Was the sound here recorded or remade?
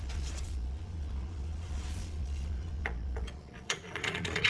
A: remade